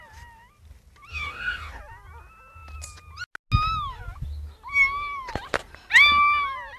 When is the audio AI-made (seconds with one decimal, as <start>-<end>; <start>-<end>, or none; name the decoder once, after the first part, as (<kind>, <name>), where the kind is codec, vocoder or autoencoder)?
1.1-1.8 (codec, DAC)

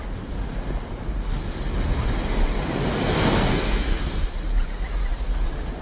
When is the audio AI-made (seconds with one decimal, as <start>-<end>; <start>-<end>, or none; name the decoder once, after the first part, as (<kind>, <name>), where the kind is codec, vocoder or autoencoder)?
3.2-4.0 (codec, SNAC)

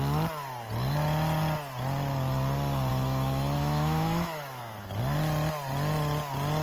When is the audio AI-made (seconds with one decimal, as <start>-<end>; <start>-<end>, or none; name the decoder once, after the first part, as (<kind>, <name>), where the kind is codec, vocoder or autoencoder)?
2.9-5.0 (autoencoder, DAC-VAE)